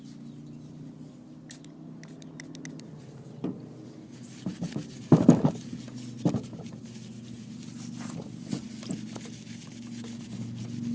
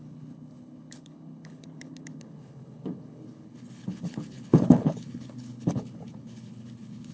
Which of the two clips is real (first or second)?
first